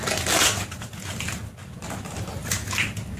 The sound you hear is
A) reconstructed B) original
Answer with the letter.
B